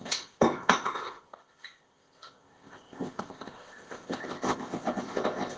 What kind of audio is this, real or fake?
fake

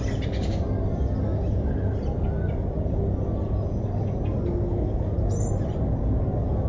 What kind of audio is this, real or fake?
real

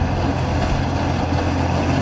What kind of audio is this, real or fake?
real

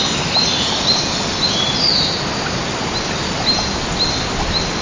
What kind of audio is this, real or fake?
real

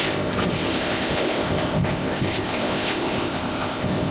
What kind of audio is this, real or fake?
fake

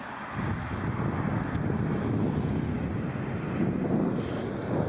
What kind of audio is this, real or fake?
real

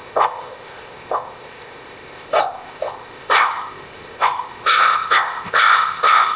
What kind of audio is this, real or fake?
fake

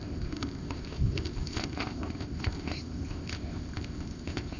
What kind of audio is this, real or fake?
fake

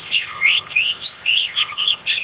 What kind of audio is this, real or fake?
fake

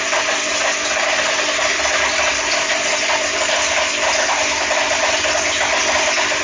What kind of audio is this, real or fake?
real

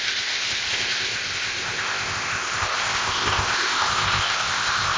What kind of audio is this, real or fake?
fake